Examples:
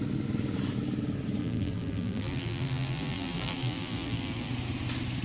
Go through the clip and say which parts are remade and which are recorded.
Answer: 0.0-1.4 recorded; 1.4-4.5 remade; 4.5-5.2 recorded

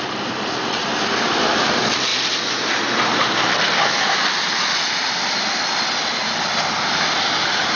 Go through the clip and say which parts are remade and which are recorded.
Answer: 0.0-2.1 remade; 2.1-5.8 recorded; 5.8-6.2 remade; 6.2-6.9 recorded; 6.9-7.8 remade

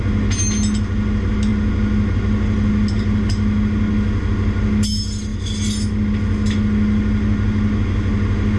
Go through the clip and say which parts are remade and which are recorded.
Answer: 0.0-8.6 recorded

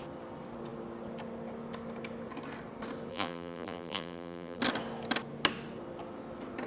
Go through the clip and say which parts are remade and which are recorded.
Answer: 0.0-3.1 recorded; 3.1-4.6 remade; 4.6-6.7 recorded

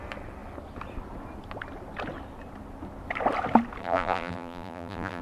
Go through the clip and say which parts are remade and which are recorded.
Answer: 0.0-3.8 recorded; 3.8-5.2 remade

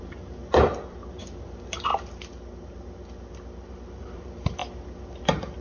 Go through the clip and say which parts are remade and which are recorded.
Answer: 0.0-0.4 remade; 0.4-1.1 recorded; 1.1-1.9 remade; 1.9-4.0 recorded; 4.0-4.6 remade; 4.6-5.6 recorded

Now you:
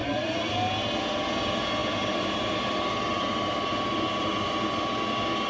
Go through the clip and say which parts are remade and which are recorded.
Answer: 0.0-0.5 remade; 0.5-1.8 recorded; 1.8-4.5 remade; 4.5-5.5 recorded